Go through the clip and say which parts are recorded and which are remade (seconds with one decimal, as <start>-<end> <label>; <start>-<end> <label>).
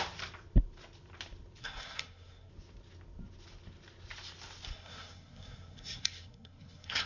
0.0-1.6 recorded; 1.6-2.5 remade; 2.5-4.7 recorded; 4.7-7.1 remade